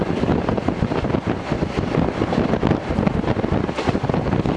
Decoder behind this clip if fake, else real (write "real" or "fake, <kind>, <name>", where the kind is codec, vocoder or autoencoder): real